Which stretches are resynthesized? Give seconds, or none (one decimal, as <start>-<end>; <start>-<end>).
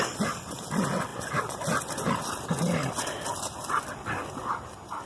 none